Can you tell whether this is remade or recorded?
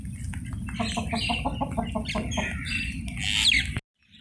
recorded